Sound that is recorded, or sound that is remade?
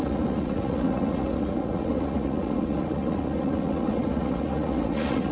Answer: remade